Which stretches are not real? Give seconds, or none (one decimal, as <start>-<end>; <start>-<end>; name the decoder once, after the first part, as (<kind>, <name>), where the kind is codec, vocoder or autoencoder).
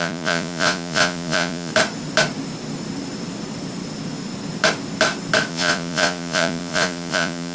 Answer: 0.0-1.7 (vocoder, Vocos); 5.5-7.5